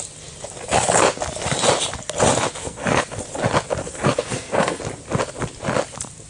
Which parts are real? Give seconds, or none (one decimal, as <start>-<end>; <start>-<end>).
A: 0.0-2.6; 3.2-3.8; 4.8-6.3